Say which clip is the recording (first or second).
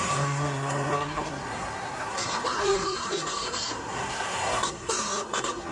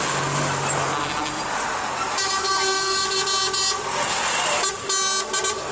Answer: second